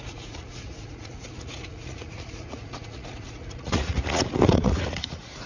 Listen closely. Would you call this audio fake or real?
fake